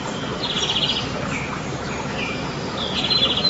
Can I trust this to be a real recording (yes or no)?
yes